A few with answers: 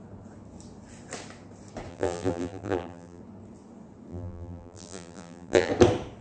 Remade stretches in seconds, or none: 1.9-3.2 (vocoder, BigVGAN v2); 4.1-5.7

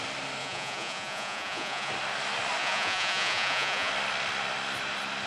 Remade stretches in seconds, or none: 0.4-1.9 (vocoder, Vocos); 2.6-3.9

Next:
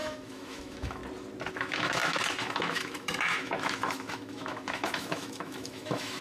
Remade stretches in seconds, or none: 0.0-1.0 (autoencoder, DAC-VAE); 1.5-6.2

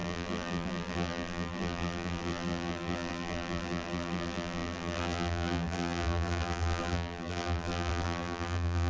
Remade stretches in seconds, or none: 0.0-8.9 (vocoder, BigVGAN v2)